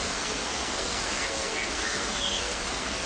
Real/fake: fake